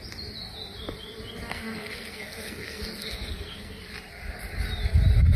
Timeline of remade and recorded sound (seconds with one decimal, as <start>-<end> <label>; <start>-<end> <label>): 0.0-1.5 recorded; 1.5-3.8 remade; 3.8-5.4 recorded